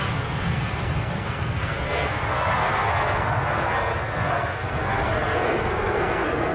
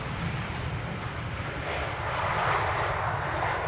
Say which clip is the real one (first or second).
second